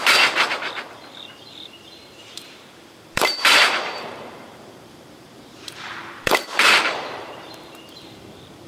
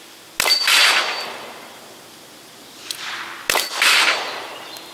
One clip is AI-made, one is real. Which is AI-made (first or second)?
first